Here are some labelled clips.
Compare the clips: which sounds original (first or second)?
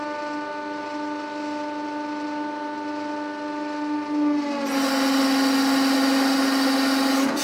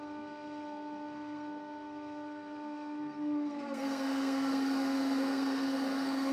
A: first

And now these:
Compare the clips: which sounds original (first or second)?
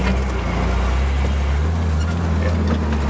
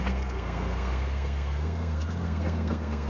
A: first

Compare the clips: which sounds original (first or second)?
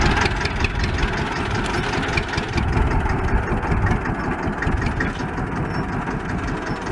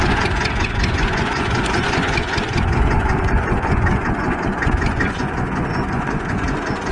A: first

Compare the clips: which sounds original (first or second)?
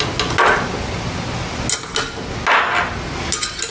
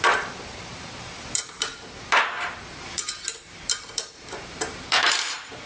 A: first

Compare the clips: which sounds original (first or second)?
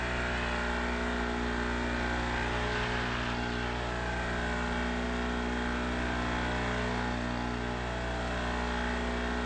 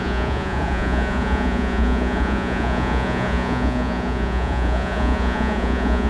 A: first